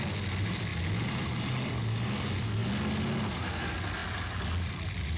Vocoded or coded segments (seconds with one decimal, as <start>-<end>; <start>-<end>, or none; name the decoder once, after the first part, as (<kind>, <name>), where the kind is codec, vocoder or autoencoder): none